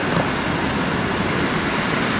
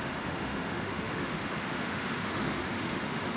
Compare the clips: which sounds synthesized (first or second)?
second